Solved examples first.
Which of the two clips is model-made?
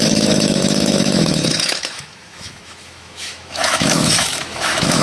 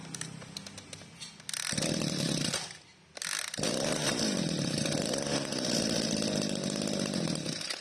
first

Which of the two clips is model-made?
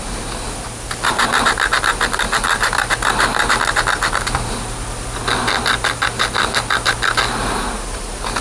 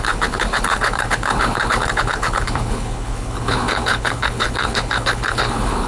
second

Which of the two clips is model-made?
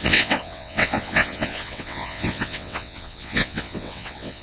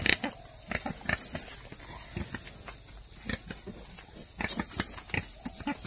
first